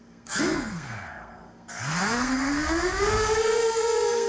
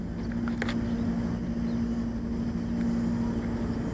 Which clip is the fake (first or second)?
first